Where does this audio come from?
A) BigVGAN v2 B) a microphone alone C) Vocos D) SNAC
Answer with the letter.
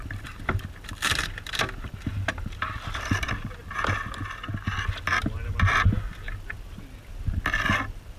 B